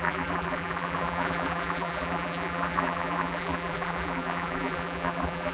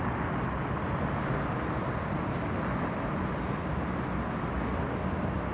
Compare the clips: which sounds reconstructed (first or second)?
first